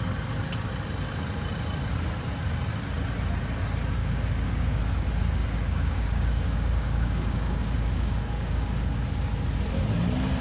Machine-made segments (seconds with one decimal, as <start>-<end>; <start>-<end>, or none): 4.0-4.8; 5.4-8.9